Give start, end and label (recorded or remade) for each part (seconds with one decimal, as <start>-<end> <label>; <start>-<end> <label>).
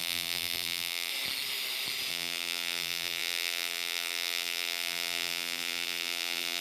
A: 0.0-1.1 remade; 1.1-2.1 recorded; 2.1-6.6 remade